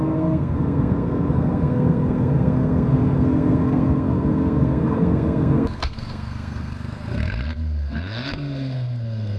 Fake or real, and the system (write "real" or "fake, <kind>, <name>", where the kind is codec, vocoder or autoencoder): fake, codec, SNAC